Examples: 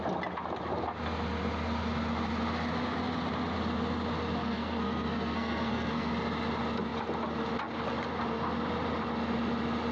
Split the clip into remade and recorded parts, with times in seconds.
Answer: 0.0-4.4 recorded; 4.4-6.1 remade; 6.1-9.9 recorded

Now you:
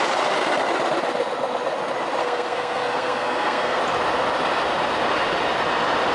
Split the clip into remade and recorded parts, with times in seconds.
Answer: 0.0-2.2 recorded; 2.2-3.8 remade; 3.8-6.1 recorded